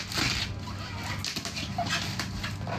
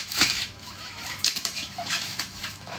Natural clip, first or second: first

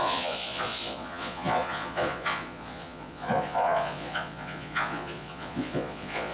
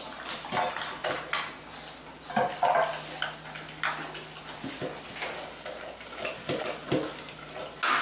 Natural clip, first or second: second